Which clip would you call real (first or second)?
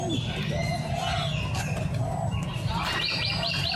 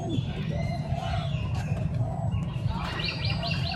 first